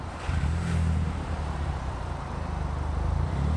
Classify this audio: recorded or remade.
recorded